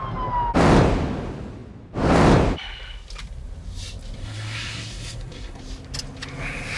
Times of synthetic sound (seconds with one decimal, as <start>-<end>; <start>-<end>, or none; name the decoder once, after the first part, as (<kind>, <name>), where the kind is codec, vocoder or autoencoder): 4.2-5.6 (codec, SNAC)